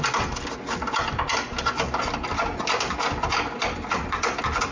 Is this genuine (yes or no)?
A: yes